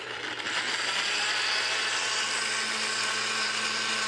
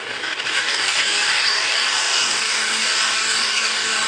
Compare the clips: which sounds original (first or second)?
first